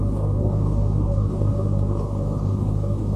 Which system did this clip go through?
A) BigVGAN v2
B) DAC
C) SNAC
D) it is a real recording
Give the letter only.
B